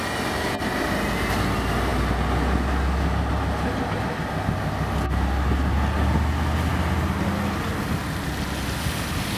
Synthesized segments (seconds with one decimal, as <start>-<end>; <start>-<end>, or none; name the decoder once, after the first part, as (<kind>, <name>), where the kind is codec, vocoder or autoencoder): none